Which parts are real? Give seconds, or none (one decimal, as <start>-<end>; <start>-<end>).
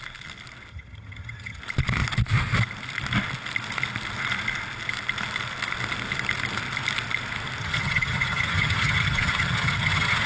0.0-0.7; 1.6-7.6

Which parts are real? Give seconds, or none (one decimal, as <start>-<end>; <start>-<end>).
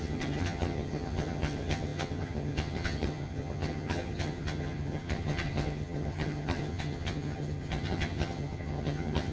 none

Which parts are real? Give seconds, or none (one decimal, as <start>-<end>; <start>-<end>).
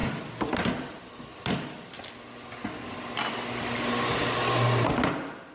0.0-5.5